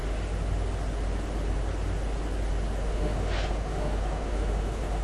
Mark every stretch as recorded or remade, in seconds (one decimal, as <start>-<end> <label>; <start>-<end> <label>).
0.0-2.8 recorded; 2.8-5.0 remade